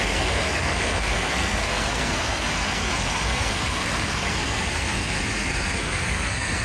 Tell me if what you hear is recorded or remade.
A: remade